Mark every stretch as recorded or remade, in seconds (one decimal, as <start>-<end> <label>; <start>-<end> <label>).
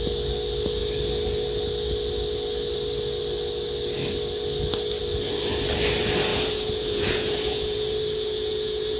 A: 0.0-6.3 recorded; 6.3-9.0 remade